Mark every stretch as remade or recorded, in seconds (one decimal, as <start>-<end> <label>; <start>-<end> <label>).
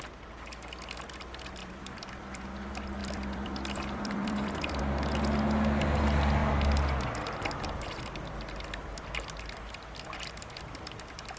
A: 0.0-1.6 recorded; 1.6-2.5 remade; 2.5-3.0 recorded; 3.0-4.8 remade; 4.8-11.4 recorded